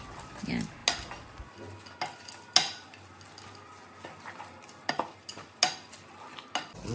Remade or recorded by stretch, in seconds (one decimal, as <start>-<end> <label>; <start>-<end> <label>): 0.0-6.9 recorded